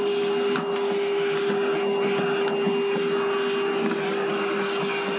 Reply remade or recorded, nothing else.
recorded